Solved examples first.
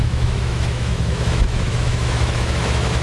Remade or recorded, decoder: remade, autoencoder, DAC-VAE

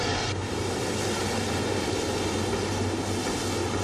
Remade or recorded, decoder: recorded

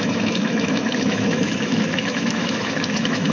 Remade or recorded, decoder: remade, autoencoder, DAC-VAE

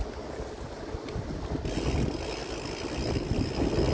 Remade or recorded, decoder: recorded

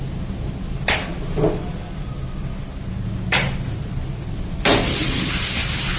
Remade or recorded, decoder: recorded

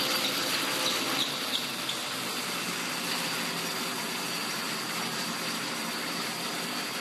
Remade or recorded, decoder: recorded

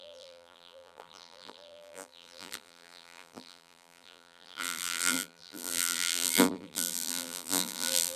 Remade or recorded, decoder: remade, vocoder, BigVGAN v2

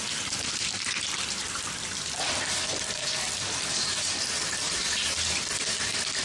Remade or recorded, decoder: remade, vocoder, BigVGAN v2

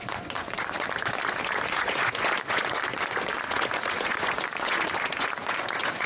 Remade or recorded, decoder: remade, vocoder, Vocos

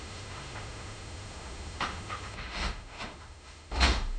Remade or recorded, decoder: remade, autoencoder, DAC-VAE